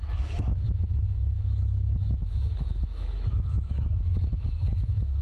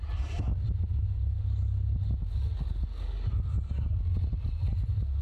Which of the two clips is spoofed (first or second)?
first